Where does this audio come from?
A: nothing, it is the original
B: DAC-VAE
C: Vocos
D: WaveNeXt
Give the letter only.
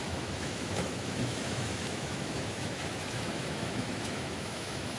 B